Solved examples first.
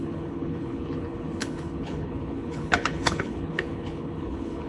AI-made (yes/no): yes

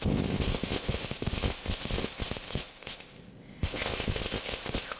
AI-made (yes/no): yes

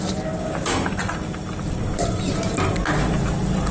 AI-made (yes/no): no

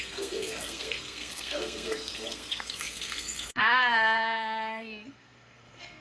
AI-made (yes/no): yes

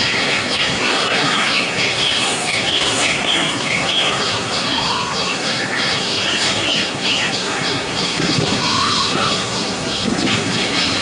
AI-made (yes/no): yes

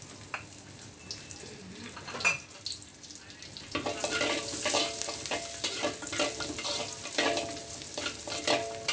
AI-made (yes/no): no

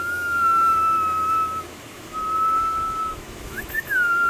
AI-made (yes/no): yes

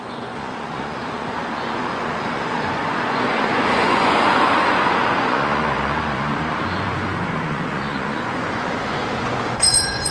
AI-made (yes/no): yes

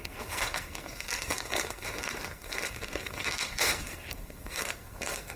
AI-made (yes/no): yes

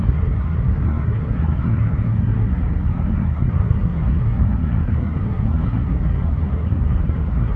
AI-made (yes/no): yes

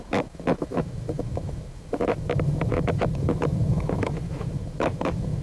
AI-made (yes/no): yes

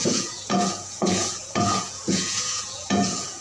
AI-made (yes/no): yes